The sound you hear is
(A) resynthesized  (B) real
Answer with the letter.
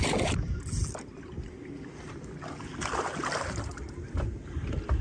B